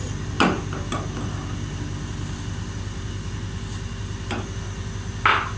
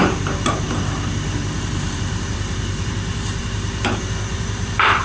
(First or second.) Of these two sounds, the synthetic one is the second